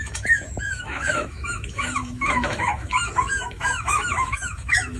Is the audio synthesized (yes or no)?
yes